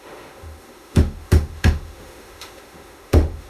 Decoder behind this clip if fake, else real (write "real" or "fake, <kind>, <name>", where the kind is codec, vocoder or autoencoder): fake, autoencoder, DAC-VAE